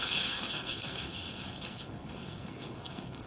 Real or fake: fake